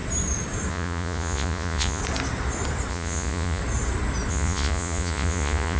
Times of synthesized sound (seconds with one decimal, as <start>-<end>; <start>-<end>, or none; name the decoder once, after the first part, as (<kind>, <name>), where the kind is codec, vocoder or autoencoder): 0.7-2.0 (vocoder, Vocos); 2.9-3.6; 4.3-5.8